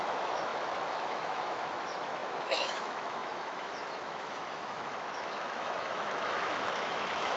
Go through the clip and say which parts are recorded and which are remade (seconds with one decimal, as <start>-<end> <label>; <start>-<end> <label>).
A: 0.0-7.4 remade